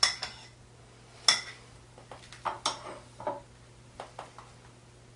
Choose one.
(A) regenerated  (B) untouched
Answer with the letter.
B